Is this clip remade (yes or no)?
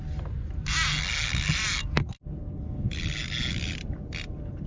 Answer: no